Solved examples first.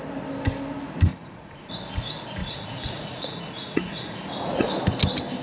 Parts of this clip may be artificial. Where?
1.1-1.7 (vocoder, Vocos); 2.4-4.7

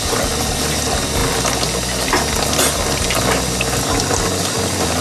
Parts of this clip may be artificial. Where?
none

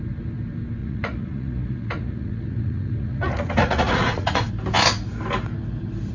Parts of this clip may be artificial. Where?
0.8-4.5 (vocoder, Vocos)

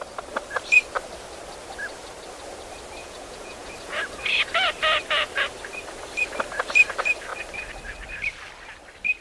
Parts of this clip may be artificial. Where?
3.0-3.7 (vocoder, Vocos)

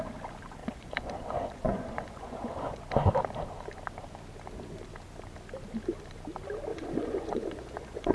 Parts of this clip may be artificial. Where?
0.6-2.8 (vocoder, Vocos); 6.7-8.1

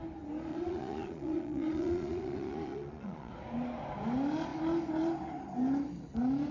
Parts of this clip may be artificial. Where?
0.5-3.3 (vocoder, Vocos)

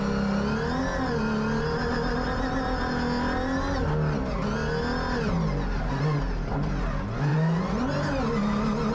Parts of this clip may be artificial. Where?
7.3-7.8 (vocoder, Vocos)

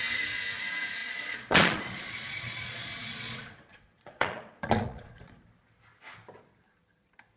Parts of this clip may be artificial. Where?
1.0-5.4 (vocoder, Vocos)